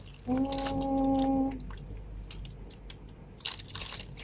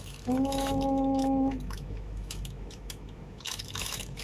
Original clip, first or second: first